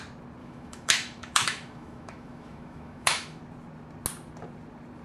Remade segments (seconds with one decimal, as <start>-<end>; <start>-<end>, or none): 0.4-3.4